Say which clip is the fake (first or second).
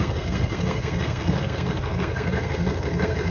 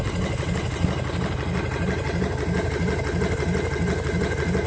first